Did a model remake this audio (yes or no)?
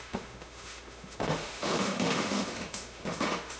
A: yes